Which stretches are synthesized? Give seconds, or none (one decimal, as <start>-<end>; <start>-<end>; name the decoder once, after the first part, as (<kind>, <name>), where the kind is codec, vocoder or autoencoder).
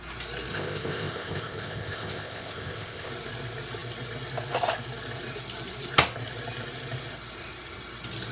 0.5-3.1 (codec, ZipCodec)